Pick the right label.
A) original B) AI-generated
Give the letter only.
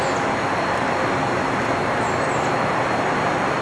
A